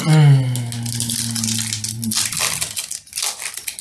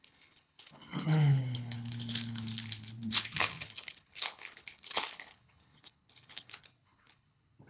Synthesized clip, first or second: second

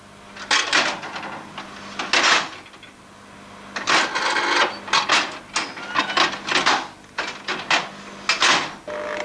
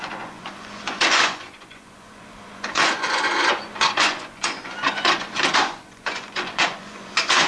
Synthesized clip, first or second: second